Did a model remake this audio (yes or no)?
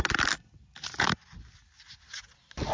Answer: no